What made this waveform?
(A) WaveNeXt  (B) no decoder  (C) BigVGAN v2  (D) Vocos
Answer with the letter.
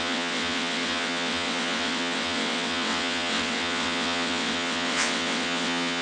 A